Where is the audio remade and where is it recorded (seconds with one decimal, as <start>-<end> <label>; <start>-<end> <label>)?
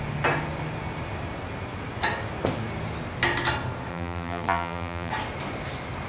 0.0-3.9 recorded; 3.9-5.1 remade; 5.1-6.1 recorded